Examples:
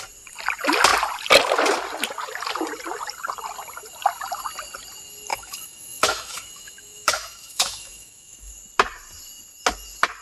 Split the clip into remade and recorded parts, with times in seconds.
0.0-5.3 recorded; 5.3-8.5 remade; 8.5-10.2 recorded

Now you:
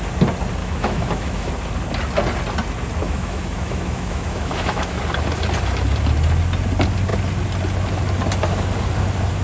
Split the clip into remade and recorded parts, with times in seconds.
0.0-0.6 recorded; 0.6-1.5 remade; 1.5-3.0 recorded; 3.0-5.0 remade; 5.0-9.4 recorded

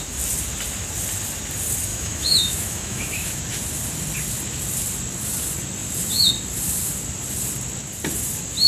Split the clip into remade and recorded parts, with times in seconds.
0.0-1.9 recorded; 1.9-3.4 remade; 3.4-8.7 recorded